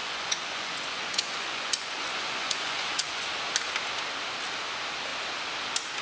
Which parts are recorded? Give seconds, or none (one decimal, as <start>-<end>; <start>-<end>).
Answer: 3.3-6.0